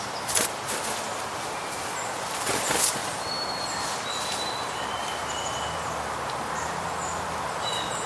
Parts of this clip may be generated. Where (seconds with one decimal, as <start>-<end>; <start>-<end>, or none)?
none